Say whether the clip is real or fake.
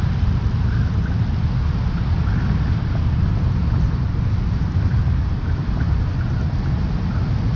real